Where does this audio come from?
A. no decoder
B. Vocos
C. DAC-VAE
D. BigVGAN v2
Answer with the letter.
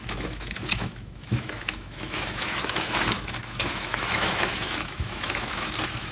C